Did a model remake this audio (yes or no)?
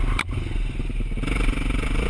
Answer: no